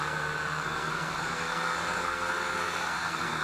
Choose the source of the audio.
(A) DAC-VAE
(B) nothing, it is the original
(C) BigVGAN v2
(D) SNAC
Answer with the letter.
D